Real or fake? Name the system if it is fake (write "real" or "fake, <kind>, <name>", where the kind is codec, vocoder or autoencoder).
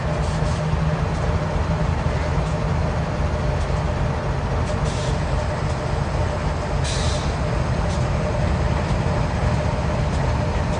real